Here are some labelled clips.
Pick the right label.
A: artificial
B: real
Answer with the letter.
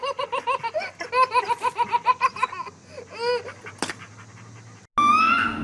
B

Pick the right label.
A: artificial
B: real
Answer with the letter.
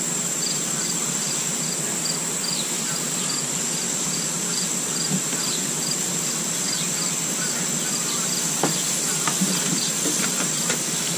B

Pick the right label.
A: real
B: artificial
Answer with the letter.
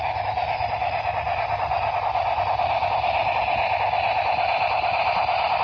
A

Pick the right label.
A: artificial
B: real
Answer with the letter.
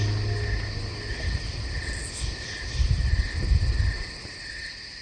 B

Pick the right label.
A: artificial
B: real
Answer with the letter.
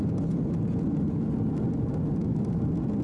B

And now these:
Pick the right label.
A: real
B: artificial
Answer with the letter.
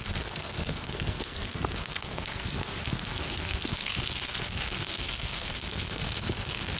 B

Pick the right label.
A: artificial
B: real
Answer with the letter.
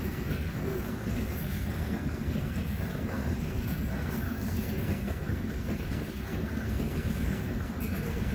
A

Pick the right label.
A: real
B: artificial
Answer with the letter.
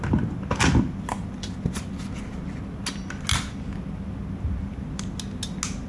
A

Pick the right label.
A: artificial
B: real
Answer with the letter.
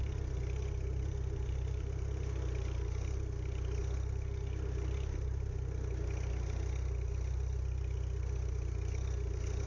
B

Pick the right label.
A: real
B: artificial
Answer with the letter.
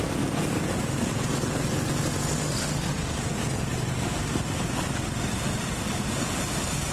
A